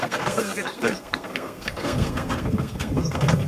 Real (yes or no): no